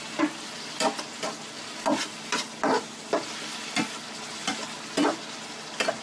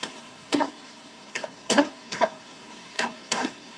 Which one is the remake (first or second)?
second